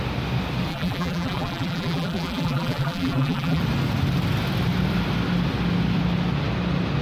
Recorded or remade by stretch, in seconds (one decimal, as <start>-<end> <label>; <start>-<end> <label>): 0.0-0.7 recorded; 0.7-3.6 remade; 3.6-7.0 recorded